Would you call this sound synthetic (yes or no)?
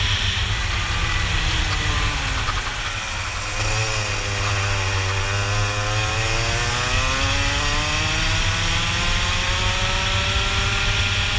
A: no